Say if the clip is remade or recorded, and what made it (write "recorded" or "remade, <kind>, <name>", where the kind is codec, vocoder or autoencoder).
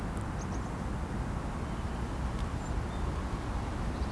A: recorded